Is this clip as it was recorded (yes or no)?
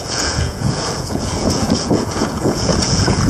no